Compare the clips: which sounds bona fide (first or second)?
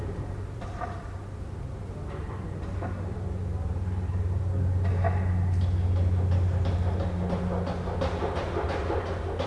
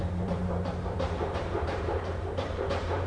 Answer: first